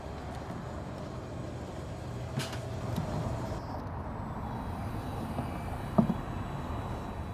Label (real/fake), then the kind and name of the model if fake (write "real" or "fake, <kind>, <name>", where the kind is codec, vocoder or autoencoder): real